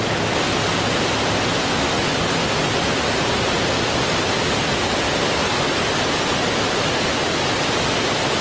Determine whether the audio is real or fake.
real